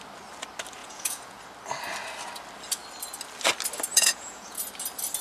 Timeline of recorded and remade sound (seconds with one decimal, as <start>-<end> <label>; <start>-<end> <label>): 0.0-0.8 recorded; 0.8-1.4 remade; 1.4-3.9 recorded; 3.9-4.6 remade; 4.6-5.2 recorded